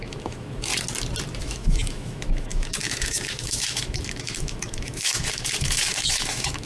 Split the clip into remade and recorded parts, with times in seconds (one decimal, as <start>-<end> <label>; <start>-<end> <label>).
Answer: 0.0-0.7 remade; 0.7-1.4 recorded; 1.4-6.7 remade